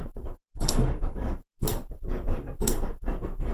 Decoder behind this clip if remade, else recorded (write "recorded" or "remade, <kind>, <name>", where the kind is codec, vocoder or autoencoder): remade, codec, SNAC